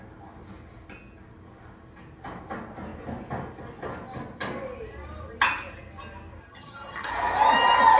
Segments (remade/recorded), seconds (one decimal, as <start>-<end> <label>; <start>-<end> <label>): 0.0-6.4 recorded; 6.4-7.1 remade; 7.1-8.0 recorded